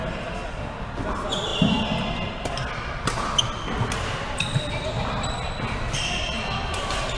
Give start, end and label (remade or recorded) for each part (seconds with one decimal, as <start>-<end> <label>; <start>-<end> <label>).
0.0-7.2 recorded